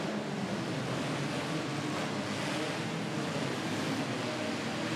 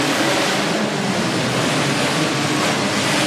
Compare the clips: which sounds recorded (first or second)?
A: first